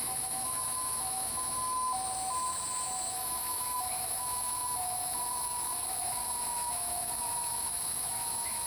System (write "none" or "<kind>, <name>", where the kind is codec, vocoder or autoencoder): autoencoder, DAC-VAE